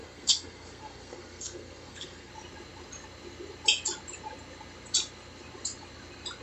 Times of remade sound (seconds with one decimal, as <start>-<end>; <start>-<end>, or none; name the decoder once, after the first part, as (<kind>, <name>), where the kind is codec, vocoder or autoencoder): 0.0-2.3 (codec, SNAC)